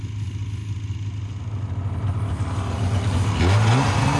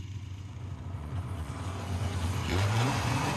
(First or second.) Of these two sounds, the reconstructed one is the second